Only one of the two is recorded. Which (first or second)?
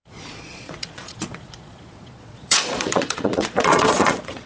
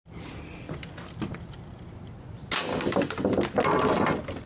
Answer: second